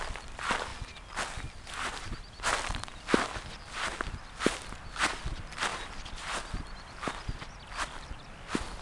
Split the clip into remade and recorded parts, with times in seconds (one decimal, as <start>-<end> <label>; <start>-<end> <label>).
0.0-8.8 recorded